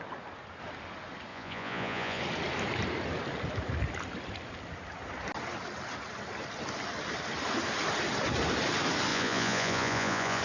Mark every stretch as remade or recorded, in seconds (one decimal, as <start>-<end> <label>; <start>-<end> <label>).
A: 0.0-1.3 recorded; 1.3-2.2 remade; 2.2-9.1 recorded; 9.1-10.4 remade